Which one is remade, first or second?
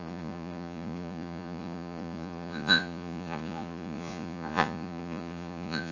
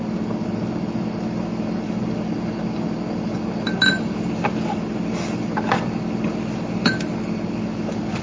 first